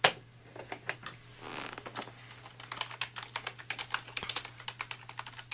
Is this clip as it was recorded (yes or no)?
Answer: yes